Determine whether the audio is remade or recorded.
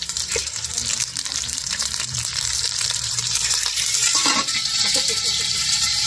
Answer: remade